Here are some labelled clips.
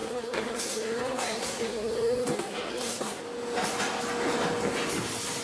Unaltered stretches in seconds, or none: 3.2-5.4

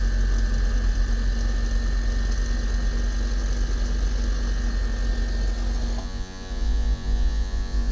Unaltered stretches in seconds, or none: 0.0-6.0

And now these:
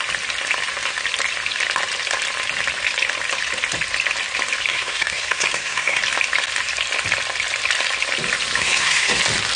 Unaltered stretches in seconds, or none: 0.0-4.7; 6.0-8.6; 9.2-9.6